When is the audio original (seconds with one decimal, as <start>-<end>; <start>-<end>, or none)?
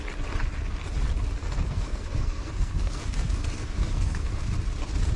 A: 0.0-1.4; 4.5-5.2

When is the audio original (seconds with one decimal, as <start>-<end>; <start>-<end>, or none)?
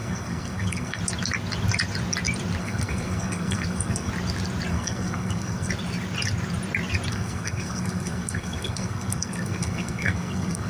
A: 1.0-2.6; 4.1-4.7; 5.7-7.1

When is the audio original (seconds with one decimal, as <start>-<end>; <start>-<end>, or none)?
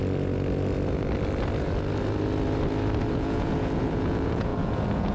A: 0.0-3.1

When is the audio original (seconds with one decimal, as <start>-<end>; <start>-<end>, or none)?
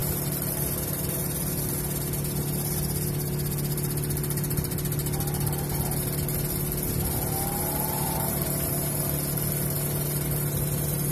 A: 0.0-11.1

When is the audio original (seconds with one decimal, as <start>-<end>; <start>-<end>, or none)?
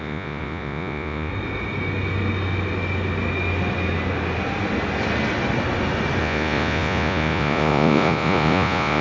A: 1.3-6.2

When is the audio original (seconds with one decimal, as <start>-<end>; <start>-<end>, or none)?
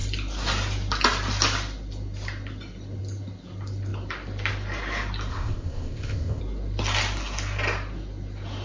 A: 0.0-5.3; 6.4-8.6